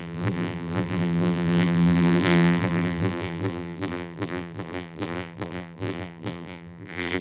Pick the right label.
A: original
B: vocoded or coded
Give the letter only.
B